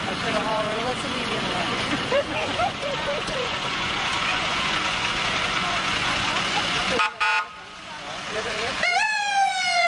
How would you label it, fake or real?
fake